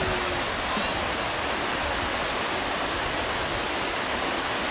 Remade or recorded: recorded